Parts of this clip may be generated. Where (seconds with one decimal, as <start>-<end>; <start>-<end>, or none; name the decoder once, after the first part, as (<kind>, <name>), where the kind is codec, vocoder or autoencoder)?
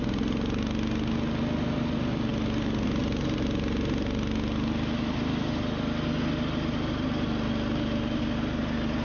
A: none